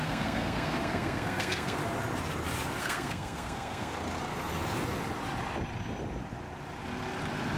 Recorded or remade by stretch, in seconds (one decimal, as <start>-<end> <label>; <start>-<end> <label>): 0.0-1.8 remade; 1.8-2.8 recorded; 2.8-3.9 remade; 3.9-7.6 recorded